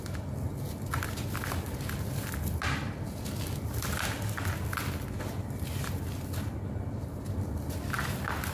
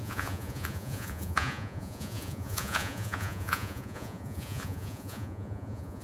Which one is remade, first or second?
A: second